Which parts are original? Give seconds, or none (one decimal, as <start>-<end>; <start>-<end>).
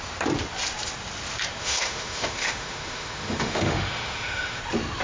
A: 0.0-1.6; 4.6-5.0